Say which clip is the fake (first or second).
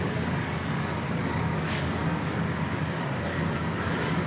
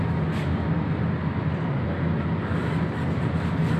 first